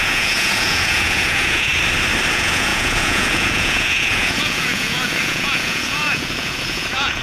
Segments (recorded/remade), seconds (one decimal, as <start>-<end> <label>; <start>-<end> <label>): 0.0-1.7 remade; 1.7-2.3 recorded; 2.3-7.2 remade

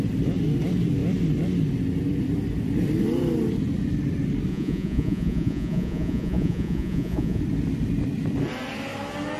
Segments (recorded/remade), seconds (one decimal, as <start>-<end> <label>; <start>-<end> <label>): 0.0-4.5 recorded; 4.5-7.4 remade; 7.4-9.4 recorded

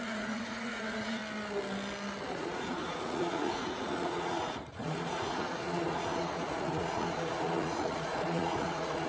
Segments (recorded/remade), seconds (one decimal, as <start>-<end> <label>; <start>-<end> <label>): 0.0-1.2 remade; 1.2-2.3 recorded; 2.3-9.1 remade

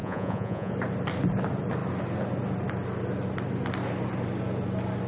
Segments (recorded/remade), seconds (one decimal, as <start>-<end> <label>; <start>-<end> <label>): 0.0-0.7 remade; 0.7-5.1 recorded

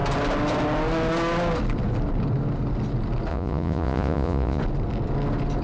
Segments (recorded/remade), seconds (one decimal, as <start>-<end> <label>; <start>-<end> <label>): 0.0-3.3 recorded; 3.3-4.6 remade; 4.6-5.6 recorded